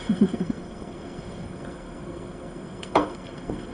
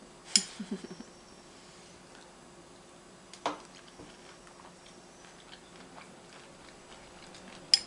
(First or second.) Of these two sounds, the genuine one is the second